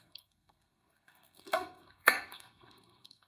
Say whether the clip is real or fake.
fake